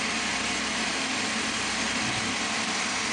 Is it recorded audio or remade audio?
recorded